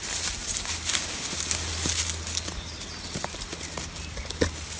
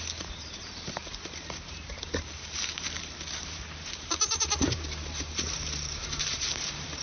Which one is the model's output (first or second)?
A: second